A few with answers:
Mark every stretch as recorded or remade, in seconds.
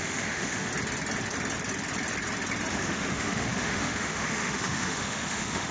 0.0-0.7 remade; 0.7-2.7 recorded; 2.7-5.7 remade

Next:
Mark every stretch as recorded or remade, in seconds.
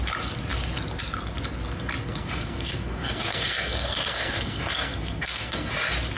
0.0-2.0 recorded; 2.0-5.7 remade; 5.7-6.2 recorded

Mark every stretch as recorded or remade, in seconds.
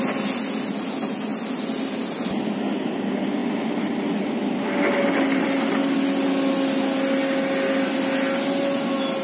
0.0-9.2 recorded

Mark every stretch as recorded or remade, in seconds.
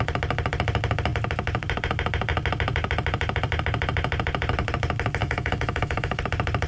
0.0-5.2 recorded; 5.2-6.2 remade; 6.2-6.7 recorded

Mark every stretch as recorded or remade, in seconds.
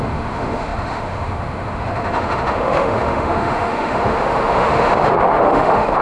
0.0-6.0 remade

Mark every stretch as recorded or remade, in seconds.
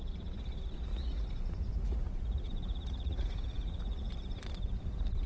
0.0-0.9 recorded; 0.9-4.1 remade; 4.1-5.3 recorded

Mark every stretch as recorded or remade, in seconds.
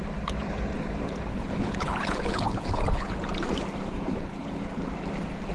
0.0-1.3 recorded; 1.3-3.1 remade; 3.1-4.1 recorded; 4.1-4.6 remade; 4.6-5.5 recorded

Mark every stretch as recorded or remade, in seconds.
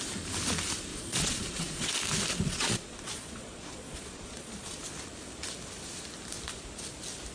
0.0-0.9 recorded; 0.9-1.9 remade; 1.9-2.5 recorded; 2.5-4.8 remade; 4.8-7.3 recorded